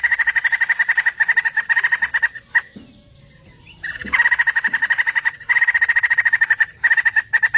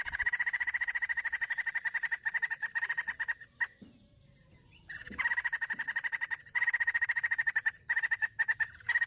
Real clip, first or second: first